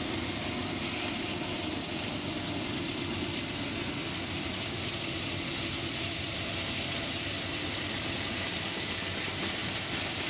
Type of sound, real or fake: fake